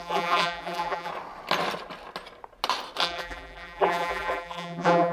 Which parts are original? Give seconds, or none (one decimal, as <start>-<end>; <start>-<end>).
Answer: 1.1-3.0